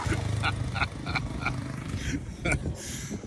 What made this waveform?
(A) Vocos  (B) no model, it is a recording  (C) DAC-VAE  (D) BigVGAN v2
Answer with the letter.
B